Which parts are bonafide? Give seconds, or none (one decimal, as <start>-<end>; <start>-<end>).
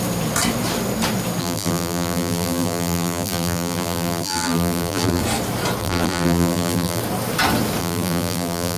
0.0-1.4; 5.2-5.8; 7.0-7.8